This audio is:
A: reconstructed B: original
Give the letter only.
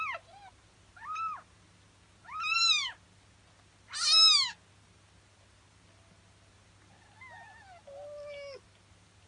B